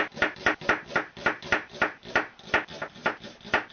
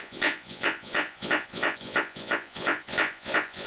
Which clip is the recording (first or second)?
first